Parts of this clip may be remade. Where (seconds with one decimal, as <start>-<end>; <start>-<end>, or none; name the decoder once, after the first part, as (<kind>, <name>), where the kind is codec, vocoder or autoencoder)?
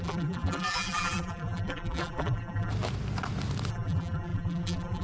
0.0-2.7 (vocoder, BigVGAN v2); 3.7-5.0